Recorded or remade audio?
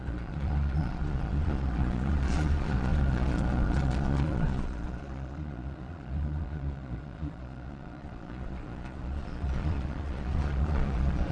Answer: remade